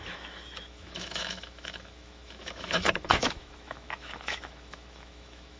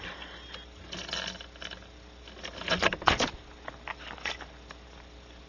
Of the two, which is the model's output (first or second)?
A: first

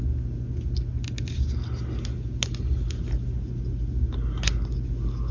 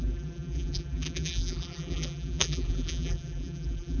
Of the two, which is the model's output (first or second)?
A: second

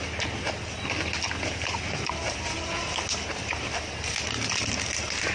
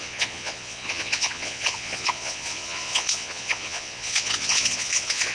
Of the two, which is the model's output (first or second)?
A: second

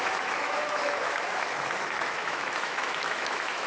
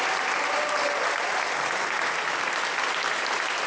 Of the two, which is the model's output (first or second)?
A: first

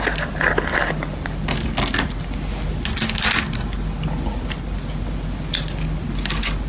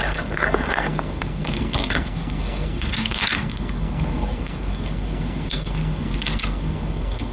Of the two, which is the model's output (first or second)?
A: second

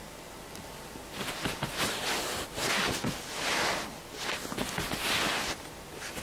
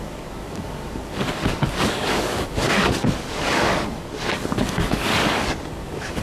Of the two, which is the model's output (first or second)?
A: second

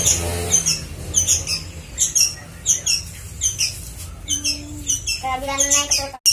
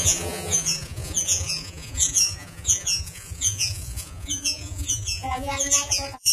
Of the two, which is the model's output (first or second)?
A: second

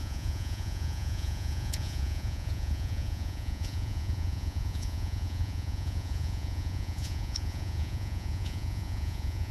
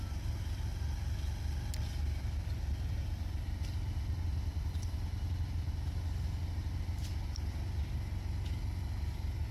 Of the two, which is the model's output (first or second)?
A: first